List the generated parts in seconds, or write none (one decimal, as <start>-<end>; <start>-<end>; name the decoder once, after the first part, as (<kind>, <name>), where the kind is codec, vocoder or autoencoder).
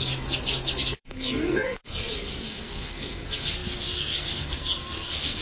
0.0-5.4 (codec, SNAC)